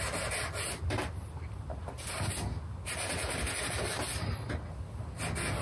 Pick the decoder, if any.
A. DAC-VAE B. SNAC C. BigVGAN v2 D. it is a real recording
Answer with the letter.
D